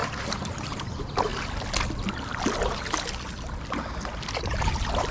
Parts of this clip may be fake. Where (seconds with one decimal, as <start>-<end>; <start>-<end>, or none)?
0.0-1.3; 4.4-5.1